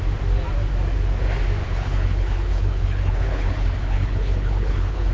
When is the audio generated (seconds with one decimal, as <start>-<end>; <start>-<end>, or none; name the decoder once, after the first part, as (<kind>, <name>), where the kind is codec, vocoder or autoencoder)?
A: 1.6-5.1 (codec, HILCodec)